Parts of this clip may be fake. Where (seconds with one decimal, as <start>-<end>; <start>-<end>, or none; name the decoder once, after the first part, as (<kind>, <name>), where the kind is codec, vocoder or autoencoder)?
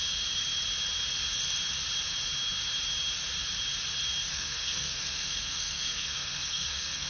4.3-7.1 (codec, SNAC)